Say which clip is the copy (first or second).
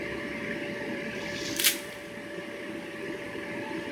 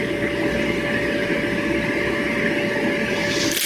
first